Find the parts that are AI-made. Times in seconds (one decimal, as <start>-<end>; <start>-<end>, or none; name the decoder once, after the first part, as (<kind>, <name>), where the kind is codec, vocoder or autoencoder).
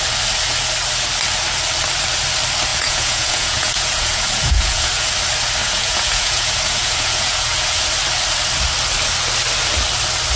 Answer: 2.7-4.9 (vocoder, Vocos); 5.6-7.8